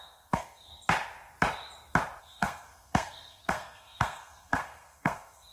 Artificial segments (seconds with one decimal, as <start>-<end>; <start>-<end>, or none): 0.0-0.7; 2.2-5.5